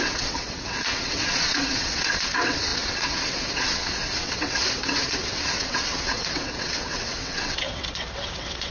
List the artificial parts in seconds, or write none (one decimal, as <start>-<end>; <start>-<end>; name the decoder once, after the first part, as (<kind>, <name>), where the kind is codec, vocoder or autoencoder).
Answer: 0.0-8.7 (vocoder, WaveNeXt)